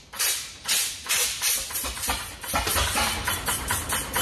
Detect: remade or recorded recorded